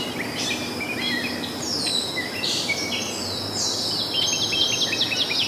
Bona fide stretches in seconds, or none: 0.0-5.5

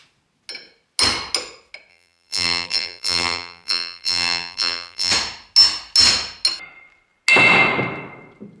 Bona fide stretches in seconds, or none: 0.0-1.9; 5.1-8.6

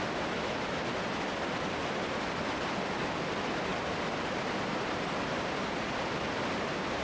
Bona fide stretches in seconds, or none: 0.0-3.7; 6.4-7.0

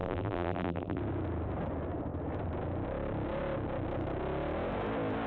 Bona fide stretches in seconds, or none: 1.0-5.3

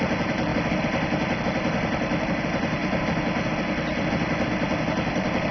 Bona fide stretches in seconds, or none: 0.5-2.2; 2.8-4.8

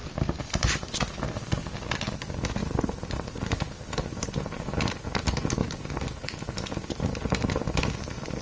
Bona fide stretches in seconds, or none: 1.5-2.6; 5.0-5.6

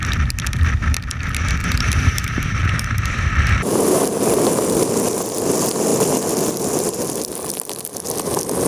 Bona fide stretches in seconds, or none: 0.0-1.6; 3.3-8.7

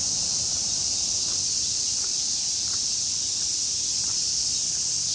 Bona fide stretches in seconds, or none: 3.1-5.1